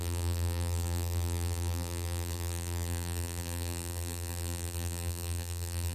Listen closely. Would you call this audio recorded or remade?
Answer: remade